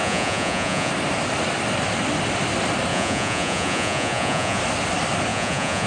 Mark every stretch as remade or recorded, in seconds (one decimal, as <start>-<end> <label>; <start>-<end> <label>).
0.0-0.9 remade; 0.9-2.9 recorded; 2.9-4.6 remade; 4.6-5.3 recorded; 5.3-5.9 remade